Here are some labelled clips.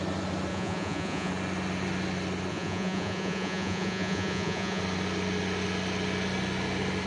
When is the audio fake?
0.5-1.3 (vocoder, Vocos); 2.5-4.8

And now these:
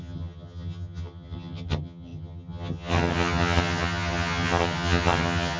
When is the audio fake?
0.0-5.6 (vocoder, HiFi-GAN)

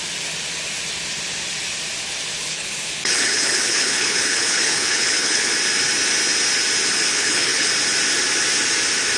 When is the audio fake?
2.4-5.5 (codec, HILCodec); 7.1-7.7

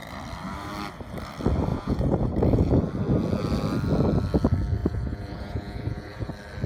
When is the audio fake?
1.7-2.8 (vocoder, Vocos); 4.8-6.3

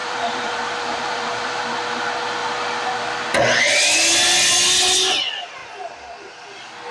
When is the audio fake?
0.0-1.6 (vocoder, BigVGAN v2)

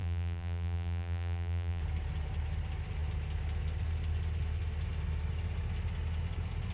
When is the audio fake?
0.0-1.8 (vocoder, BigVGAN v2)